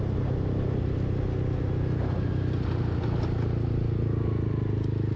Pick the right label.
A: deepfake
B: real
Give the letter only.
B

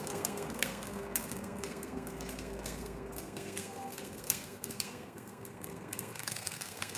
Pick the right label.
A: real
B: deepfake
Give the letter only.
B